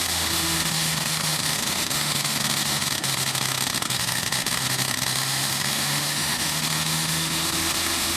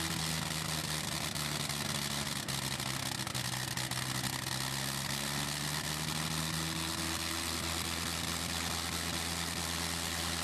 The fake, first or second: first